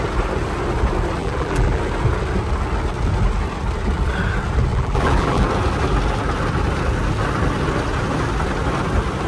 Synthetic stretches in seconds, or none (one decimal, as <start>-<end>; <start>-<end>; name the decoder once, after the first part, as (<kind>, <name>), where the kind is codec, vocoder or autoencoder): 1.2-1.8 (vocoder, BigVGAN v2); 4.7-5.4